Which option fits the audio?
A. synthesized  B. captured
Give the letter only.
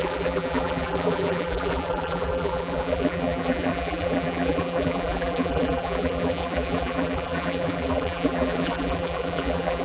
A